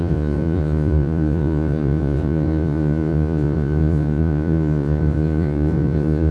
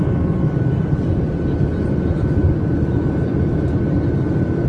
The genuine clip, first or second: second